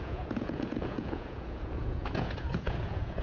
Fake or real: fake